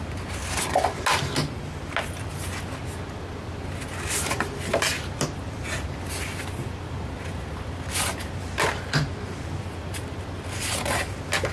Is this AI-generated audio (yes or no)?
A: no